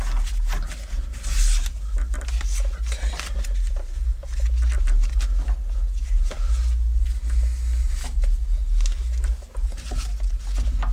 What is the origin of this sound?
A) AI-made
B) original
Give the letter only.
B